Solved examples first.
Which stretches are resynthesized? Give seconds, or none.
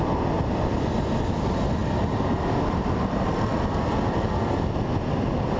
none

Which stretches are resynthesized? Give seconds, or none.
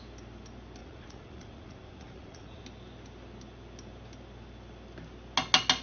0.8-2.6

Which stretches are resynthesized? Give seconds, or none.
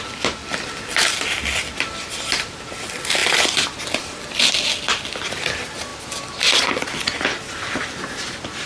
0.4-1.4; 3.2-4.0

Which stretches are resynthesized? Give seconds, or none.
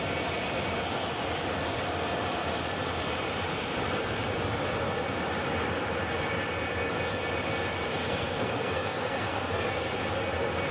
8.0-9.7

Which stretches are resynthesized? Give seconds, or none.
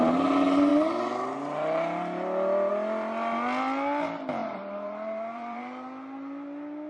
4.4-5.6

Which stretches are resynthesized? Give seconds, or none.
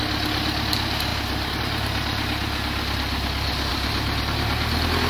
1.1-1.6; 3.7-4.2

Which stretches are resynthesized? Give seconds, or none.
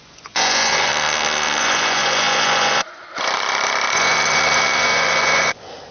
0.0-0.9; 1.6-5.9